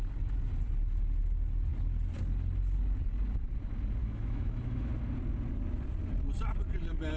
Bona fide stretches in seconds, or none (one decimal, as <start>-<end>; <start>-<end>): 0.0-4.0; 4.9-7.2